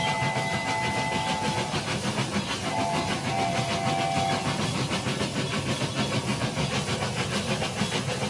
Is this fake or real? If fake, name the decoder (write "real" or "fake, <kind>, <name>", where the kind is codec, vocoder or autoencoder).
real